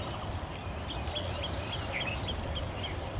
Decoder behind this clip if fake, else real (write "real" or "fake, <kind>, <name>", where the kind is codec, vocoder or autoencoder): real